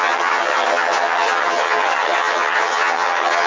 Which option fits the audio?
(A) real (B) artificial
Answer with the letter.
B